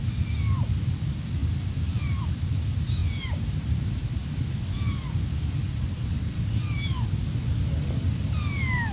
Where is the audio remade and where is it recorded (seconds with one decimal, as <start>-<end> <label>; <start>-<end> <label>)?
0.0-8.9 remade